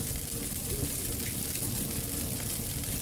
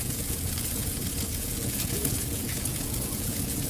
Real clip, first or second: first